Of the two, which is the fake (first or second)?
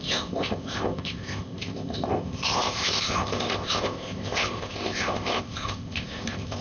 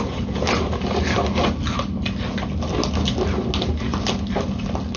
first